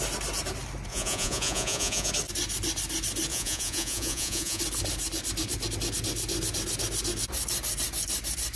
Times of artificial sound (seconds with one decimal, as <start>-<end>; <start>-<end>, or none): 0.9-2.1; 3.3-4.6